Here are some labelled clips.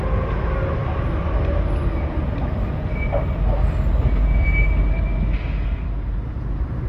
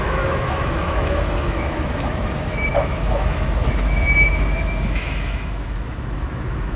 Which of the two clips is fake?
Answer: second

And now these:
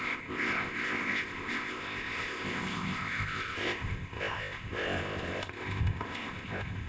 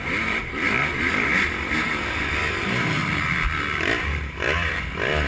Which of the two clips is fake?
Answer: first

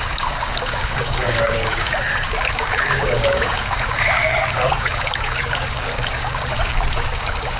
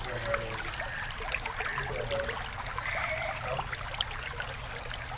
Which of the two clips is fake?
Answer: first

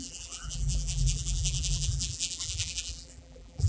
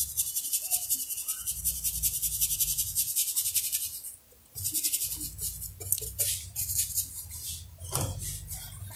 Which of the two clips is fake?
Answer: first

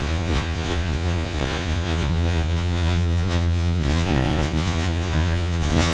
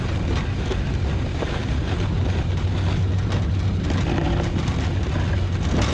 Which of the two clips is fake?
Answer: first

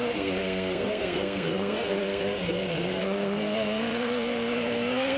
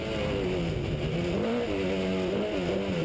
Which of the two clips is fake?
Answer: first